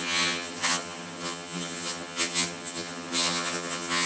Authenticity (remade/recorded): remade